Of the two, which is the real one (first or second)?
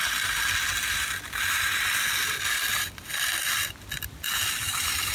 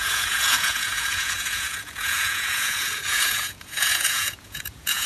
first